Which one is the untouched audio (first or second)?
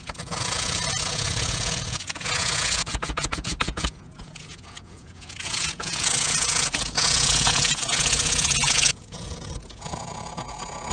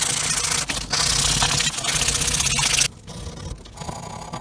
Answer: second